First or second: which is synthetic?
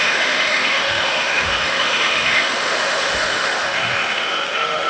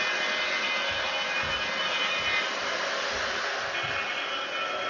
first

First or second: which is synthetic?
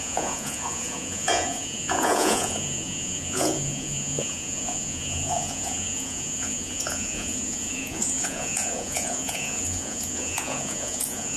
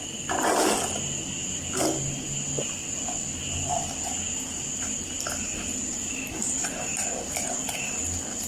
first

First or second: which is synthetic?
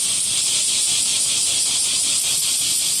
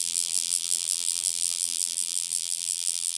second